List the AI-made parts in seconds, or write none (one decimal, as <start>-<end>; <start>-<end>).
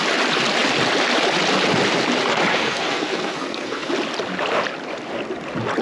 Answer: 2.5-3.9